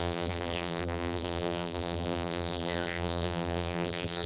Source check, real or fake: fake